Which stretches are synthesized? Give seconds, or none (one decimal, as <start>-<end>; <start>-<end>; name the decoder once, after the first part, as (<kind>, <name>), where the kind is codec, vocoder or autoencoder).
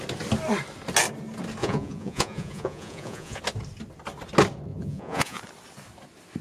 1.6-3.4 (vocoder, Vocos); 4.7-5.4